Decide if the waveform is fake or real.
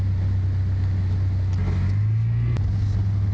real